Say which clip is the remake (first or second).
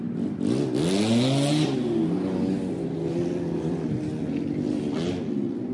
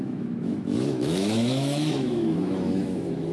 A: second